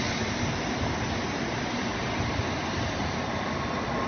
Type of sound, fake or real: fake